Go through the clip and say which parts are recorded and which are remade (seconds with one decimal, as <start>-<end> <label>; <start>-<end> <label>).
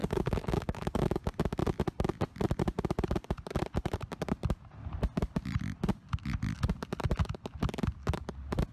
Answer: 0.0-1.2 remade; 1.2-8.7 recorded